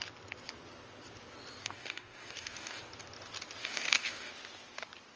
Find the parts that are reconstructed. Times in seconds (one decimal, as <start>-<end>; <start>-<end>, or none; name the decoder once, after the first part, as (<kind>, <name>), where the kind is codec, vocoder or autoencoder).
1.6-2.8 (codec, DAC); 3.6-4.3